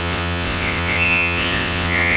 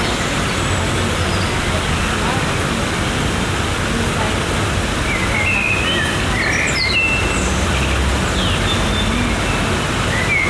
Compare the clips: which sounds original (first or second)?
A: second